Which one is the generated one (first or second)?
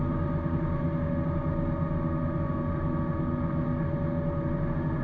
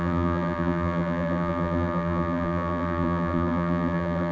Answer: second